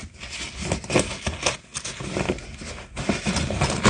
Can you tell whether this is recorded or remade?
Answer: recorded